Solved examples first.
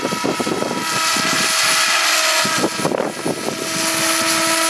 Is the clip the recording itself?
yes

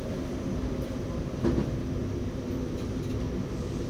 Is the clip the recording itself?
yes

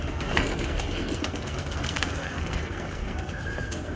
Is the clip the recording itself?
no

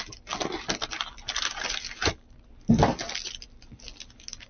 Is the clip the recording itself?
yes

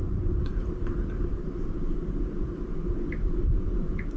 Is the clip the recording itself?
yes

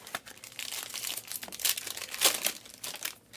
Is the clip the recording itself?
yes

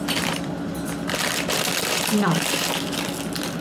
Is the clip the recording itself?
no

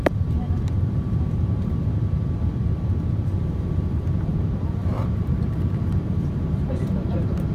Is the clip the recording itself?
no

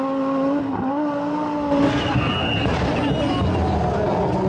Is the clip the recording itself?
yes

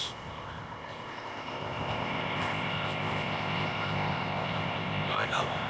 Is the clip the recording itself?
no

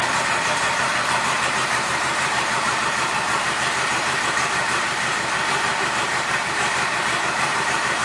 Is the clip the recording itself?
no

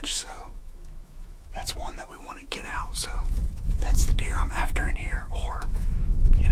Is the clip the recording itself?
no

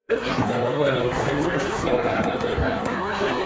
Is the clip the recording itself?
no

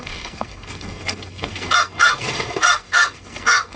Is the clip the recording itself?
no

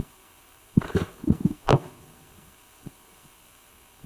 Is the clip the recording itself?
no